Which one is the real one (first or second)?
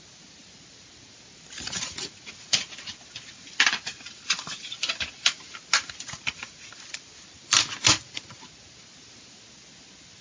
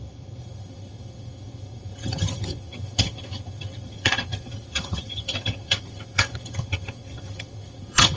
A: first